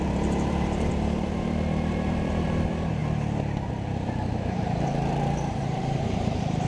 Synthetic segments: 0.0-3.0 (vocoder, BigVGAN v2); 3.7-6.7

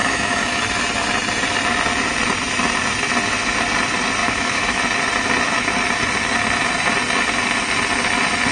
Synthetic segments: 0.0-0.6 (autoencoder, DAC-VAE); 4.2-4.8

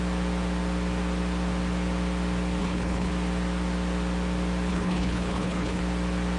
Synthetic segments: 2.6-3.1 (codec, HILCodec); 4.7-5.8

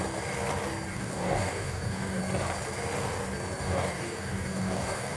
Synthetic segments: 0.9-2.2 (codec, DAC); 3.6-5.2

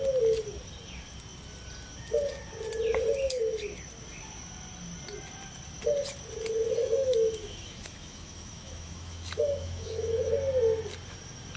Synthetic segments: 6.8-10.3 (autoencoder, DAC-VAE)